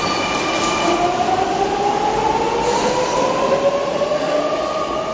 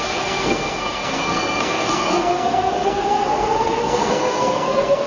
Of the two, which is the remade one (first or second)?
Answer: second